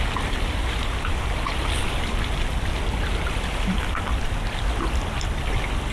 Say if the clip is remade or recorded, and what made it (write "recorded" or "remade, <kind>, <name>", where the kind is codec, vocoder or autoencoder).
recorded